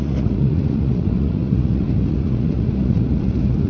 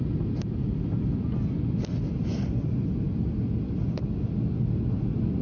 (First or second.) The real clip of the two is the second